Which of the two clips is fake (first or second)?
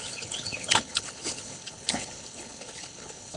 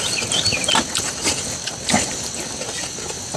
first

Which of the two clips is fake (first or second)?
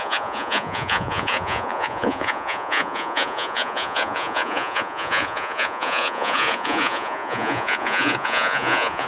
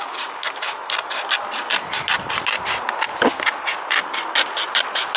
first